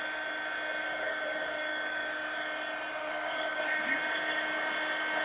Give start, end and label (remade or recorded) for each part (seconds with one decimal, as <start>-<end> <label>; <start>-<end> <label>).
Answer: 0.0-0.8 recorded; 0.8-2.0 remade; 2.0-3.0 recorded; 3.0-3.9 remade; 3.9-5.2 recorded